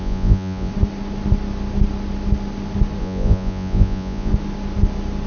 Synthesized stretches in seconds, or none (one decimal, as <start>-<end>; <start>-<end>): 0.0-0.7; 3.0-4.3